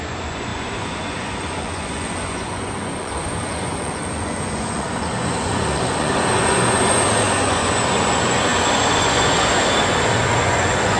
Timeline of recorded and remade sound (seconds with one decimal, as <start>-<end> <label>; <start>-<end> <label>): 0.0-11.0 remade